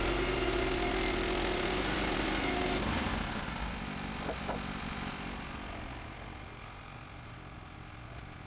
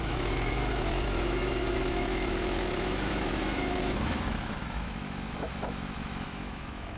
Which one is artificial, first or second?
second